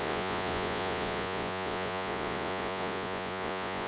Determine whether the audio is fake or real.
fake